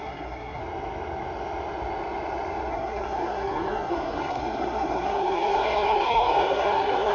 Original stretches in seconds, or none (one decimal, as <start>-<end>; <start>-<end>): 0.6-2.7